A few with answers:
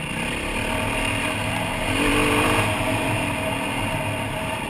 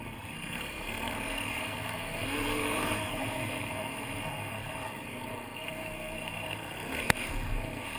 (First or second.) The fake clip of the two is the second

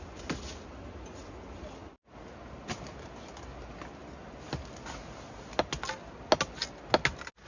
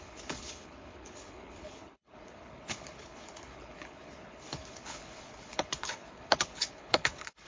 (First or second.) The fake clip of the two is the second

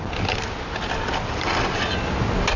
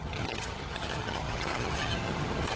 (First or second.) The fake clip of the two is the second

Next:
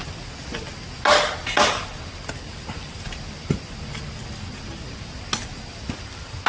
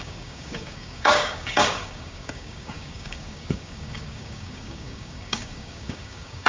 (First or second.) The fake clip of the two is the second